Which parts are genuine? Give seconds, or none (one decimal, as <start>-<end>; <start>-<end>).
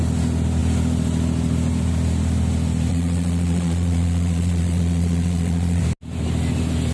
0.0-2.9; 5.8-6.9